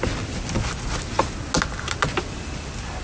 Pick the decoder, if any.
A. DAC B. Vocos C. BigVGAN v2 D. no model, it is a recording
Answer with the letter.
D